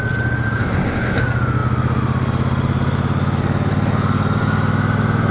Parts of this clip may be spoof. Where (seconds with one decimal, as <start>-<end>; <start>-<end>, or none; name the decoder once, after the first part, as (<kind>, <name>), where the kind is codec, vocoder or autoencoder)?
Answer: 0.6-1.2 (codec, SNAC)